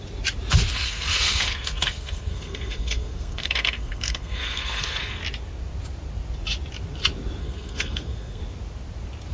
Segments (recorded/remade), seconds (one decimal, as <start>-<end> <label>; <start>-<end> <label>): 0.0-0.7 recorded; 0.7-5.2 remade; 5.2-7.4 recorded; 7.4-8.4 remade; 8.4-9.3 recorded